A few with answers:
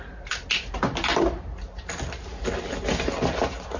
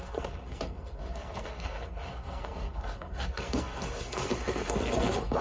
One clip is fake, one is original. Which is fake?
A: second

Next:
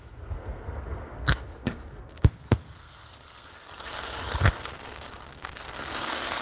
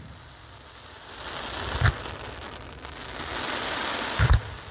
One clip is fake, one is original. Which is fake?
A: first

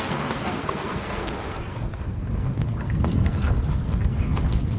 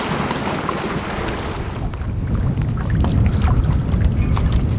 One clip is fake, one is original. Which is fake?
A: first